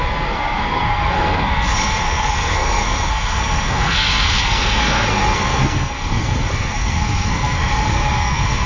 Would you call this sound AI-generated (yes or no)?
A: yes